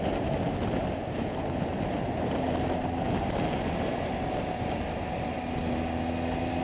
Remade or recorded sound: recorded